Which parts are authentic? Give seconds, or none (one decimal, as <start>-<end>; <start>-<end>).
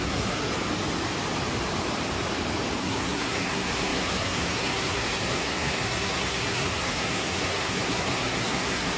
0.4-2.8